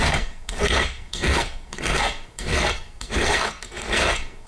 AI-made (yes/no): yes